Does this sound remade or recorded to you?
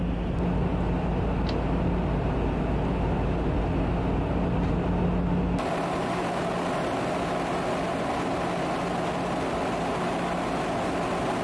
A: recorded